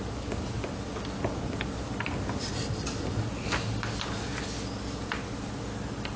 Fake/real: real